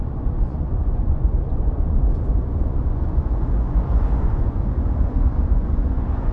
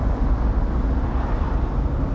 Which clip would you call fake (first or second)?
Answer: first